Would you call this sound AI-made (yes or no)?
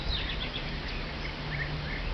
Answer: no